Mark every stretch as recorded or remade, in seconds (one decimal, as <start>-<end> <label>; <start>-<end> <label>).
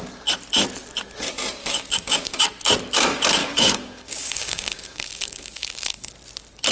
0.0-1.6 recorded; 1.6-2.4 remade; 2.4-3.4 recorded; 3.4-6.1 remade; 6.1-6.7 recorded